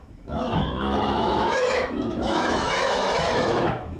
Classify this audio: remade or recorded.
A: remade